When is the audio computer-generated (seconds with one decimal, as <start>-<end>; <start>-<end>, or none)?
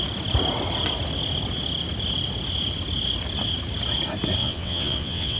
4.4-5.4